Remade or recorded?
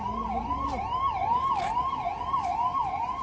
recorded